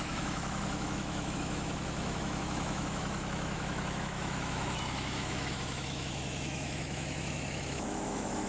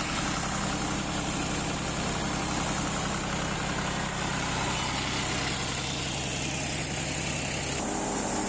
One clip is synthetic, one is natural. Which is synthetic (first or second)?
first